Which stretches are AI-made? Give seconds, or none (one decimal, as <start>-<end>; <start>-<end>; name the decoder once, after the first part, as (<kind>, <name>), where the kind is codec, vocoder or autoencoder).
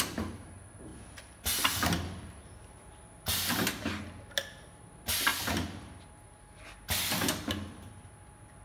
none